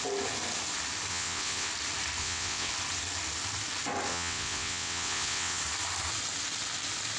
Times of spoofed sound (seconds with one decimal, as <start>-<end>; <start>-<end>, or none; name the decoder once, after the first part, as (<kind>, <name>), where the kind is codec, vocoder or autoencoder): 1.1-1.7 (vocoder, WaveNeXt); 2.2-2.7; 4.1-5.6